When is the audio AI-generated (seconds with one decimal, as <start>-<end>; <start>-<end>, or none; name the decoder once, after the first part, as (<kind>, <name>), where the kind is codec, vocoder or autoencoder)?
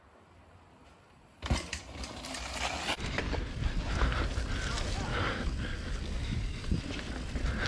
5.1-6.8 (codec, DAC)